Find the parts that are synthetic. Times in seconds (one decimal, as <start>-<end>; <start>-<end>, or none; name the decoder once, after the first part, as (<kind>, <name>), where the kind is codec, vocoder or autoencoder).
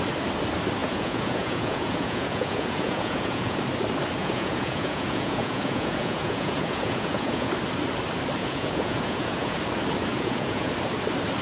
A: 0.8-3.6 (vocoder, Vocos); 4.2-7.5; 8.4-9.6; 10.1-10.7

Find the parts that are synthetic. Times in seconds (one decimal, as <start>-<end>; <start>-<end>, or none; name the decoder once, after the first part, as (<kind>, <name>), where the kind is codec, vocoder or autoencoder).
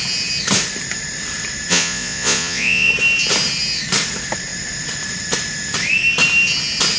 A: 1.7-2.9 (vocoder, Vocos)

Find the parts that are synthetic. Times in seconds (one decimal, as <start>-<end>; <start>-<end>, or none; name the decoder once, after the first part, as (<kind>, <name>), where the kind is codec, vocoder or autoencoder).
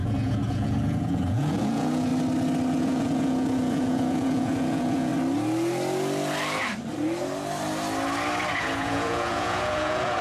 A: 0.0-2.1 (vocoder, Vocos); 2.8-5.1; 8.5-10.2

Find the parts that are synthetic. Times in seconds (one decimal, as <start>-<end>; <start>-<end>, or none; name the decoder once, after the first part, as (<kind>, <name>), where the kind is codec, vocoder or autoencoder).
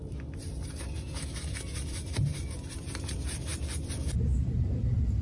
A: none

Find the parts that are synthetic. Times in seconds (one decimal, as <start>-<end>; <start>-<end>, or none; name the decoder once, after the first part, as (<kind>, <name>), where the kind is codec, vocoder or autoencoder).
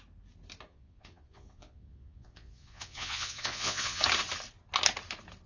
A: 0.7-4.0 (vocoder, Vocos)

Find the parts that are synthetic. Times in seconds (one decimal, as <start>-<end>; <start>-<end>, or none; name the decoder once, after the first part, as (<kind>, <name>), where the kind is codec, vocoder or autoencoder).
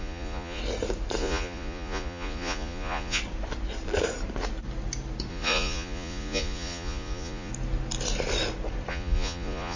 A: 0.0-0.6 (vocoder, Vocos); 1.2-3.2; 5.3-7.5; 8.9-9.8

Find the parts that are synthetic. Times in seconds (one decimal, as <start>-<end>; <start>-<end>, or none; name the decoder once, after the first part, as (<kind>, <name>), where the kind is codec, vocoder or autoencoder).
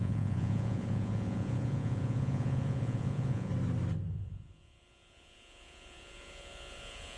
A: 0.0-3.5 (vocoder, Vocos); 4.1-7.2